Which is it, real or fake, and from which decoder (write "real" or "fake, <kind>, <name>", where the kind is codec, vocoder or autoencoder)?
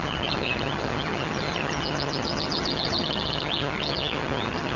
fake, vocoder, HiFi-GAN